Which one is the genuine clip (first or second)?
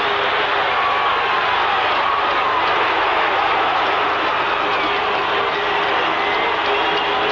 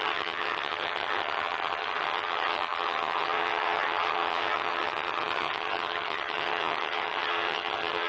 first